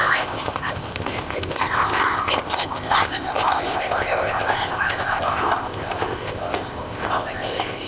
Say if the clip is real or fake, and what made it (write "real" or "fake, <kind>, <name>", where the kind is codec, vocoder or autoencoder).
fake, codec, ZipCodec